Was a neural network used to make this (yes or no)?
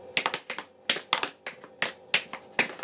no